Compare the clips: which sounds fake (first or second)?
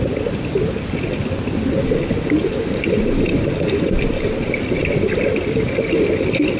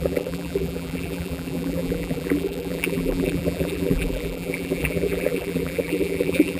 second